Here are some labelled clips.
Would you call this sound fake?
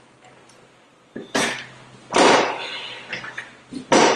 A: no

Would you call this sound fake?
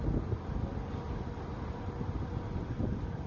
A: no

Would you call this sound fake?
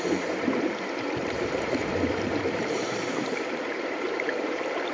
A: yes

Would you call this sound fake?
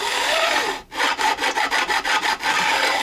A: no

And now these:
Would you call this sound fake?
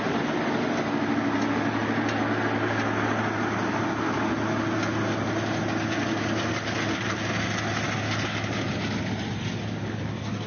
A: no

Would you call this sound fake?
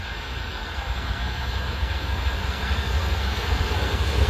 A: yes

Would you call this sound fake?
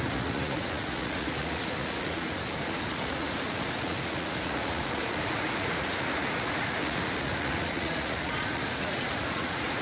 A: yes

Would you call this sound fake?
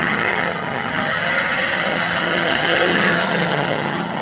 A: yes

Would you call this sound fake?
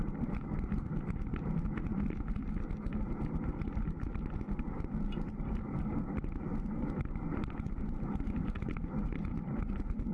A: yes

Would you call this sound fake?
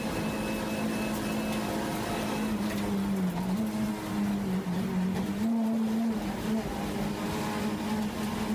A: no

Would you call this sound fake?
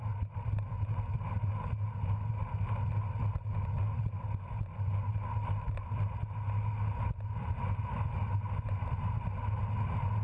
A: no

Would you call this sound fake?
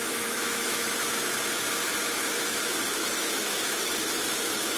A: yes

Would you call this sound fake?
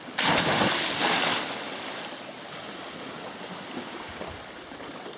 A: no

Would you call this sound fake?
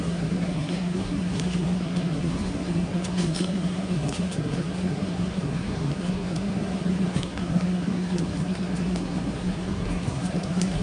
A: yes